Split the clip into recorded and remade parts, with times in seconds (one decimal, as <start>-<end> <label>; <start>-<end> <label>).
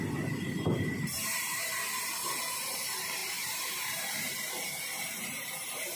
0.0-6.0 remade